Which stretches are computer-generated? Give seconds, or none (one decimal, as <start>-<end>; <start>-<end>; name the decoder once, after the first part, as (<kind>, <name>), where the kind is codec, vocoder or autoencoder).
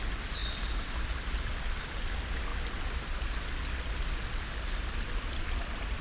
none